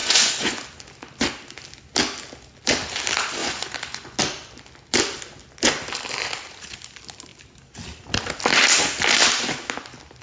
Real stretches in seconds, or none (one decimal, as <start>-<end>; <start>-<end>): 0.6-3.4; 4.2-10.2